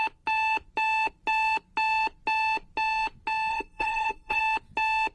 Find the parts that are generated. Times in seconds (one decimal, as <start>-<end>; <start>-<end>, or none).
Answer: 3.5-4.4